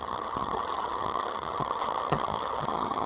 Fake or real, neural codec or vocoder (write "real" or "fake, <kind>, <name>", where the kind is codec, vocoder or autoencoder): fake, vocoder, HiFi-GAN